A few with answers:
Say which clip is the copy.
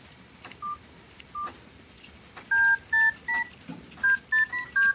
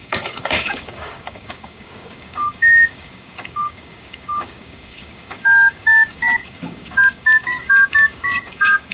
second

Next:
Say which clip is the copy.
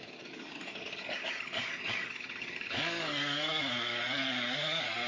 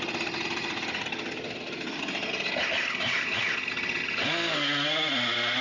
first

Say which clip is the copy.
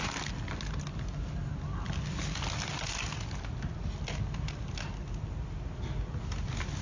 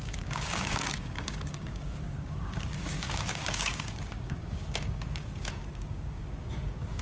second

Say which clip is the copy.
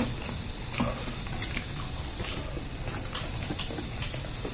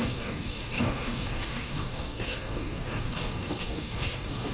second